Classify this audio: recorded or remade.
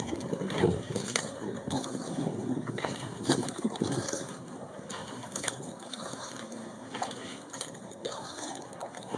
remade